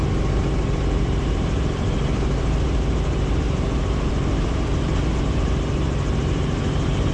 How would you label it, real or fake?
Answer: fake